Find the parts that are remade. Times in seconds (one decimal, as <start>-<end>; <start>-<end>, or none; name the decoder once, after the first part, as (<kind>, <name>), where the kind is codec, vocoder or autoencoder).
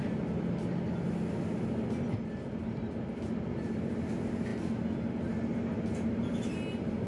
none